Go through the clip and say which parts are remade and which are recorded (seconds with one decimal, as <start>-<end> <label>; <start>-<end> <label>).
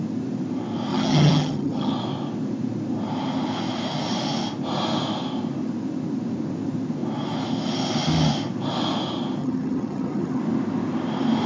0.0-0.9 recorded; 0.9-1.9 remade; 1.9-9.4 recorded; 9.4-10.4 remade; 10.4-11.5 recorded